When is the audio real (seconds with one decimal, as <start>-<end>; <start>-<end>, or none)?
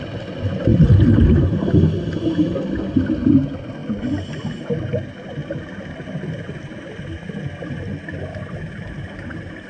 0.0-3.8; 4.8-8.3